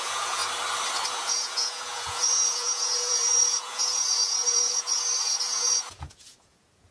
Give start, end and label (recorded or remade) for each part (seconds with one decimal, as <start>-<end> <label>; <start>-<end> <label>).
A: 0.0-0.4 remade; 0.4-1.1 recorded; 1.1-6.9 remade